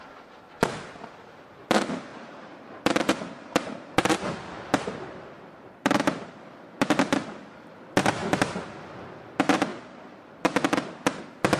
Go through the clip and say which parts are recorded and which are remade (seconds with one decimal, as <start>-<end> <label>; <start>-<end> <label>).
0.0-2.1 recorded; 2.1-6.3 remade; 6.3-9.7 recorded; 9.7-11.2 remade; 11.2-11.6 recorded